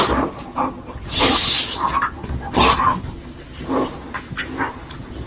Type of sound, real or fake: real